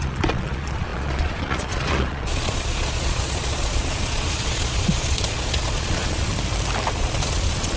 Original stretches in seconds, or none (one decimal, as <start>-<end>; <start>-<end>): 6.3-6.9